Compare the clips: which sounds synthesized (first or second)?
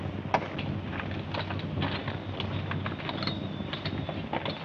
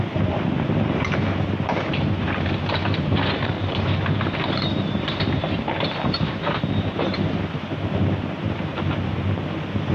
second